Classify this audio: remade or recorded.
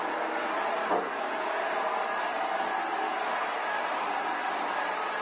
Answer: recorded